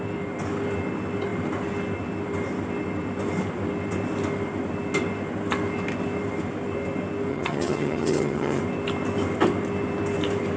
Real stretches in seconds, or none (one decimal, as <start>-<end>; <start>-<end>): 0.0-7.3; 8.6-10.6